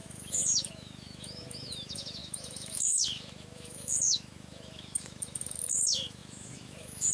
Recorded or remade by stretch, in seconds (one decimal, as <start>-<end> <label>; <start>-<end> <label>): 0.0-7.1 remade